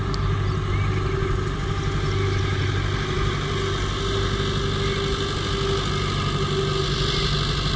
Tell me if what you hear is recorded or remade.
recorded